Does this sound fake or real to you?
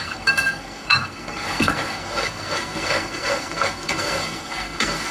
fake